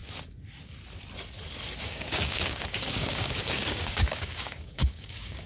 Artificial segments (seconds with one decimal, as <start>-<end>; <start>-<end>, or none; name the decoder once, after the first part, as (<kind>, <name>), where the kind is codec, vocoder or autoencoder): 1.8-5.5 (codec, DAC)